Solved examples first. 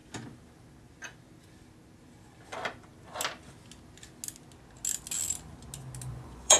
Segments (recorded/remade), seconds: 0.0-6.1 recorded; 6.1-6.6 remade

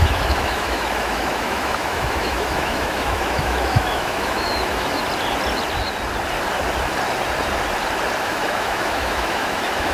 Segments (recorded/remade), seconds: 0.0-5.0 remade; 5.0-8.2 recorded; 8.2-9.9 remade

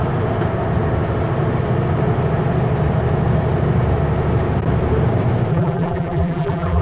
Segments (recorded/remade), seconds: 0.0-5.5 recorded; 5.5-6.8 remade

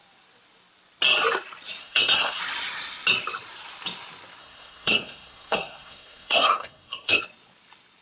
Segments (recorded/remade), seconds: 0.0-1.8 recorded; 1.8-2.4 remade; 2.4-4.4 recorded; 4.4-7.2 remade; 7.2-8.0 recorded

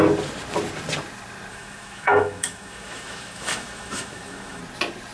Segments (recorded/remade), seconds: 0.0-1.5 recorded; 1.5-4.6 remade; 4.6-5.1 recorded

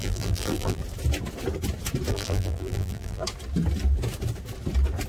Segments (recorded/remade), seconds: 0.0-0.8 remade; 0.8-2.1 recorded; 2.1-3.2 remade; 3.2-5.1 recorded

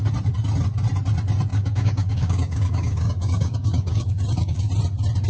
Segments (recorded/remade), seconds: 0.0-1.5 recorded; 1.5-4.7 remade; 4.7-5.3 recorded

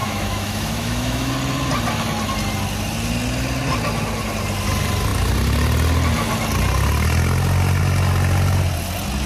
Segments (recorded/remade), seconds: 0.0-1.3 remade; 1.3-9.3 recorded